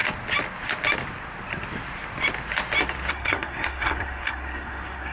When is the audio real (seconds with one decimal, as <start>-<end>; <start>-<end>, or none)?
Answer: 0.0-3.1